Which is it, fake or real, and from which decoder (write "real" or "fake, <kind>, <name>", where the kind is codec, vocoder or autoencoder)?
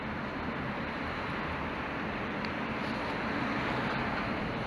real